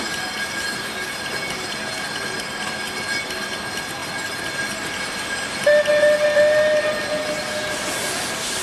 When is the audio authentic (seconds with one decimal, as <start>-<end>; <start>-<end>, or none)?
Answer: 0.0-8.6